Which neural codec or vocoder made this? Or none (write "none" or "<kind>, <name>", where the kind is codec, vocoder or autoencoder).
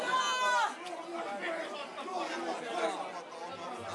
none